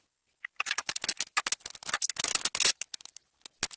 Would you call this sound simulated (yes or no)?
no